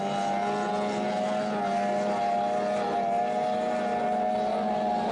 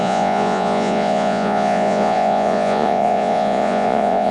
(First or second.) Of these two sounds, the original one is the first